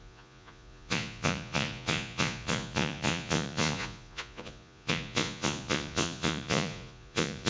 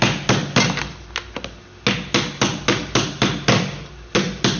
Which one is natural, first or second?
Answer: second